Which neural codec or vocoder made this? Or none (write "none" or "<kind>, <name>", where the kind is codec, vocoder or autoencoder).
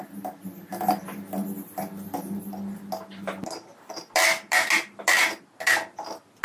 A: none